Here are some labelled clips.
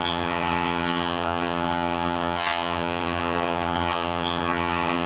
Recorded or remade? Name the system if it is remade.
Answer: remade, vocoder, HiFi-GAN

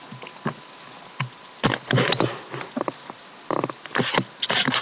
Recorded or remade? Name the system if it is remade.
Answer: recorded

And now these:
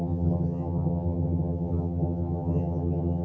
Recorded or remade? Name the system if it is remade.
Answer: remade, vocoder, HiFi-GAN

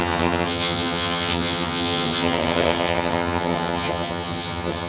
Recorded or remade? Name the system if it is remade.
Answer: remade, vocoder, HiFi-GAN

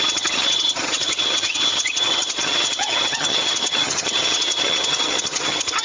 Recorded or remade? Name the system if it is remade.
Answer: remade, vocoder, HiFi-GAN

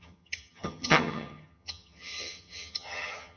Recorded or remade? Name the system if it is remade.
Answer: remade, vocoder, HiFi-GAN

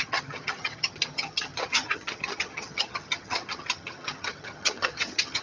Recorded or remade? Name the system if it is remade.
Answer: remade, vocoder, HiFi-GAN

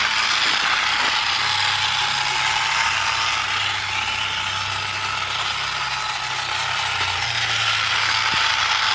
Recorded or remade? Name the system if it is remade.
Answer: recorded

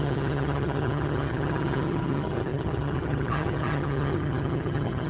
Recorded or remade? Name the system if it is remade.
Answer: remade, vocoder, HiFi-GAN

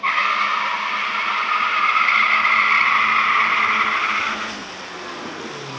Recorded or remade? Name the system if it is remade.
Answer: recorded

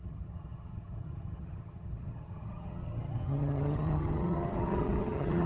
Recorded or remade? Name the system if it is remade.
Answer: remade, vocoder, HiFi-GAN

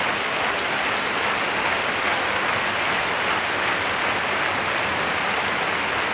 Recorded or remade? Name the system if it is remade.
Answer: recorded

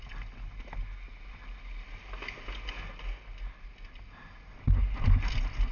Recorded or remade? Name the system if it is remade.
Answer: recorded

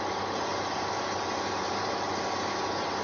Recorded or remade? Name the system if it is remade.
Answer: recorded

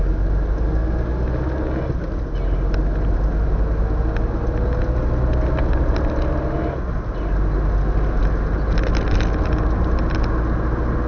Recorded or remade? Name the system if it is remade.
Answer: recorded